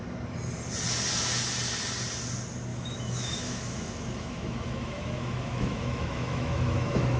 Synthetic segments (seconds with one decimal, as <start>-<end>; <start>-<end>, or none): 2.7-7.2

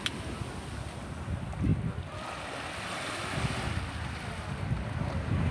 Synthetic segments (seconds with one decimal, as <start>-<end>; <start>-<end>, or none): none

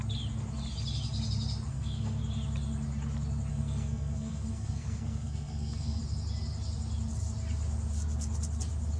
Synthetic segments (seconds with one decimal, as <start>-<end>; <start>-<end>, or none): 1.7-2.2; 3.5-6.0

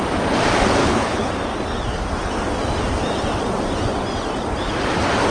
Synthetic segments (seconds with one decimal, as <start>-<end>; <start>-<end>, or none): 0.8-1.3

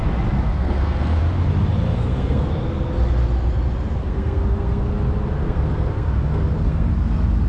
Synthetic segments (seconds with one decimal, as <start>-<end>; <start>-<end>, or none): 0.5-1.2; 1.9-2.5; 4.0-4.9; 5.4-6.9

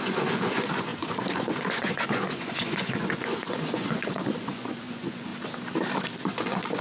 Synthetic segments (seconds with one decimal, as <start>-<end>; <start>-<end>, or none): 0.0-5.3; 6.2-6.8

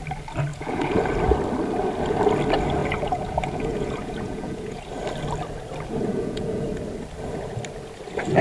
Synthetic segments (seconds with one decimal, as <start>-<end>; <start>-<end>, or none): 0.5-1.0; 2.8-4.8; 6.1-6.7